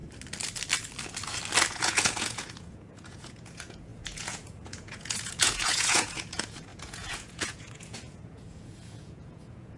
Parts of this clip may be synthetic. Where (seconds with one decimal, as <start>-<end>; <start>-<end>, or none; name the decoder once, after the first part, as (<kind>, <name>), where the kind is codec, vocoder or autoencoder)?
1.7-9.8 (vocoder, Vocos)